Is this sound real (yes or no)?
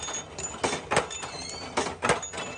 yes